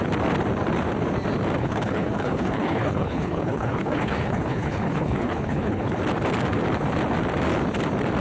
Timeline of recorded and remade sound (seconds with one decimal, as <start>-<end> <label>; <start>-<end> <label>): 0.0-1.6 recorded; 1.6-6.0 remade; 6.0-8.2 recorded